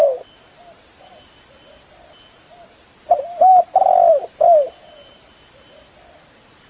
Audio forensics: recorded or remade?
recorded